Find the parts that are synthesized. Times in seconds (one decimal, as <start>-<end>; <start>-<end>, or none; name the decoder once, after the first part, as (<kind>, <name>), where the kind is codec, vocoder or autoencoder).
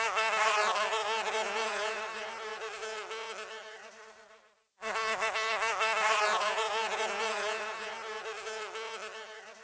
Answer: 1.4-2.0 (vocoder, Vocos); 6.3-7.9